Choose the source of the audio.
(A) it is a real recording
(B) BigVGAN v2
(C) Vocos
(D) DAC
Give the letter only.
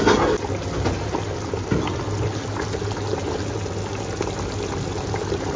A